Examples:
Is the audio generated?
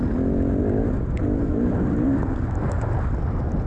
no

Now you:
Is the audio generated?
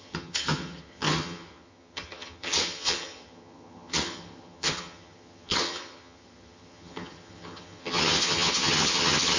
yes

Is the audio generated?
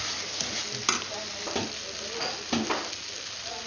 no